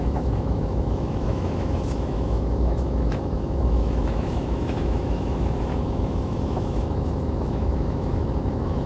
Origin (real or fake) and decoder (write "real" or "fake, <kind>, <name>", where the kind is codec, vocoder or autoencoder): fake, autoencoder, DAC-VAE